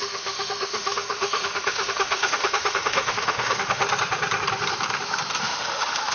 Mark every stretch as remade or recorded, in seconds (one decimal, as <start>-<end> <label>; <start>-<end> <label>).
0.0-3.8 remade; 3.8-5.4 recorded; 5.4-6.1 remade